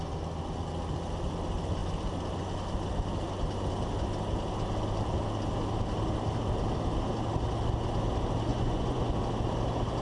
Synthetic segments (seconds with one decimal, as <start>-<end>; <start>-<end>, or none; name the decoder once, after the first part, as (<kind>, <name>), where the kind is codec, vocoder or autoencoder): 8.5-9.0 (vocoder, Vocos)